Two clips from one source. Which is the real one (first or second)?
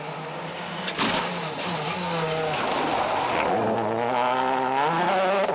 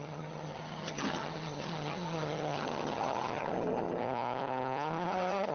first